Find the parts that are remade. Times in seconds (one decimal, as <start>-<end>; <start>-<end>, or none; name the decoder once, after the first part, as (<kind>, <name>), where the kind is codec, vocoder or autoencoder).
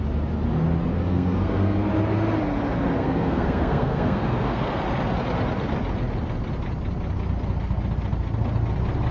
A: 1.1-1.9 (codec, SNAC); 3.0-4.7